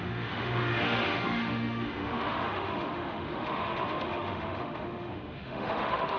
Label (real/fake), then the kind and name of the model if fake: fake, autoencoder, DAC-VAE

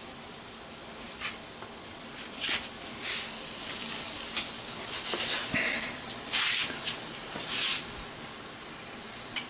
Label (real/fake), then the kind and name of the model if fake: real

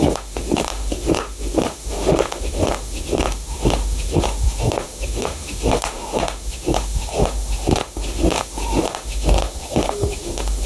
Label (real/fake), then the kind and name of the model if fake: fake, autoencoder, DAC-VAE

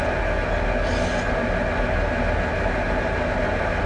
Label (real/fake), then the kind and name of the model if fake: real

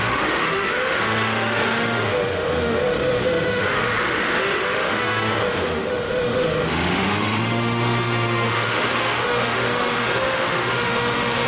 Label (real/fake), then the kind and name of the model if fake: fake, autoencoder, DAC-VAE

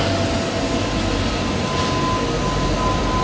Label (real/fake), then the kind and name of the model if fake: real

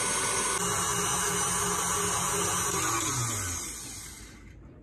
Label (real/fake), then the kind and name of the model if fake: real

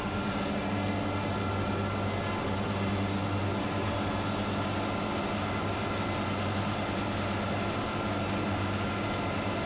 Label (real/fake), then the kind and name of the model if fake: real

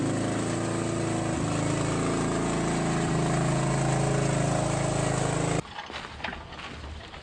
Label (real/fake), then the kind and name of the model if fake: real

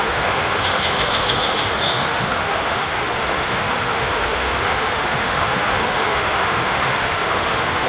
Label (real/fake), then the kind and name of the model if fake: fake, autoencoder, DAC-VAE